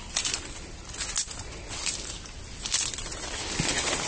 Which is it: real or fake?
real